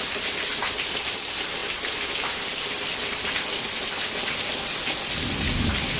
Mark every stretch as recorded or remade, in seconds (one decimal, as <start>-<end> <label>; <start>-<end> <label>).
0.0-6.0 recorded